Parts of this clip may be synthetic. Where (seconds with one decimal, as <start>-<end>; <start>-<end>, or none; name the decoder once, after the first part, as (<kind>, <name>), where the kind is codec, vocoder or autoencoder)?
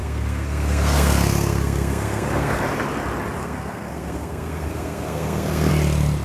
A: 0.0-2.6 (codec, SNAC); 3.4-5.7